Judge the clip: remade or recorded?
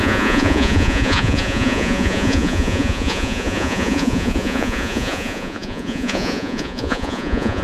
remade